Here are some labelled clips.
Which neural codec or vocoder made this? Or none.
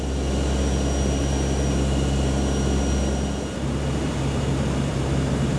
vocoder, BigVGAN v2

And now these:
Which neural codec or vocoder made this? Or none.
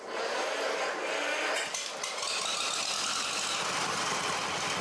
none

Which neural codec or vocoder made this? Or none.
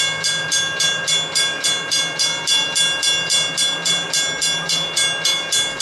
none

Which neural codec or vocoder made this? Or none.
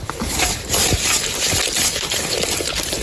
none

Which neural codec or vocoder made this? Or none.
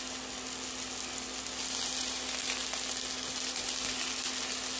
none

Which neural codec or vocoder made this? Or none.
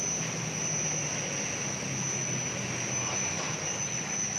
none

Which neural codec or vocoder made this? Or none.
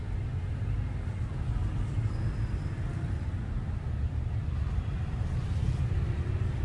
none